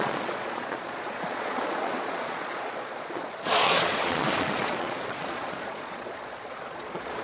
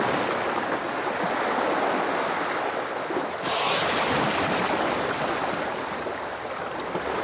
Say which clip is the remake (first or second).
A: first